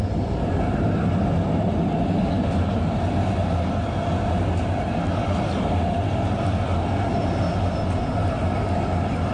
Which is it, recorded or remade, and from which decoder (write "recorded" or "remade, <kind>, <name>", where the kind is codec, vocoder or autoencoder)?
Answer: recorded